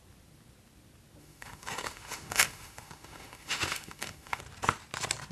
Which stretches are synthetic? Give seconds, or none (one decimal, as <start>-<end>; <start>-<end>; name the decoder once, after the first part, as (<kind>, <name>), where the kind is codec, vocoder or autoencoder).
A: 1.2-4.4 (autoencoder, DAC-VAE)